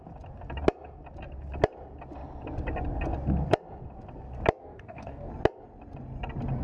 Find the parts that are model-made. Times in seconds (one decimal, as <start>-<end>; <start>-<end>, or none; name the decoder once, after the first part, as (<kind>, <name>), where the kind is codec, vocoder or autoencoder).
4.6-5.3 (codec, DAC)